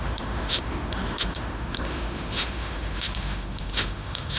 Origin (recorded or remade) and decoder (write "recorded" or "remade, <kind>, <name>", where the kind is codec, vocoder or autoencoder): remade, autoencoder, DAC-VAE